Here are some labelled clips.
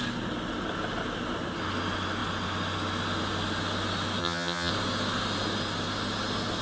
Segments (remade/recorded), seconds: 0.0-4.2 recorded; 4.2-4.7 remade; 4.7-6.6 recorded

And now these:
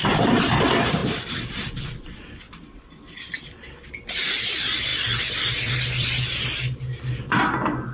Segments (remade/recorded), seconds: 0.0-7.9 recorded

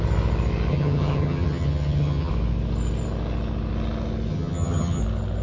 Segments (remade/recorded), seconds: 0.0-0.7 recorded; 0.7-2.3 remade; 2.3-4.3 recorded; 4.3-5.0 remade; 5.0-5.4 recorded

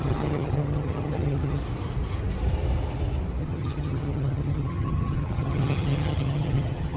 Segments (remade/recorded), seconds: 0.0-1.6 remade; 1.6-3.4 recorded; 3.4-7.0 remade

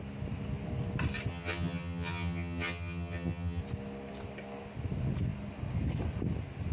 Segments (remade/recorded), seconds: 0.0-1.3 recorded; 1.3-3.6 remade; 3.6-6.7 recorded

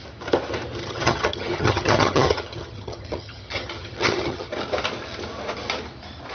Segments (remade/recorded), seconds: 0.0-0.8 recorded; 0.8-4.5 remade; 4.5-6.3 recorded

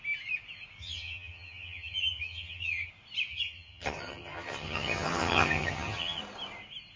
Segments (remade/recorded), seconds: 0.0-0.8 recorded; 0.8-2.9 remade; 2.9-3.3 recorded; 3.3-6.2 remade; 6.2-7.0 recorded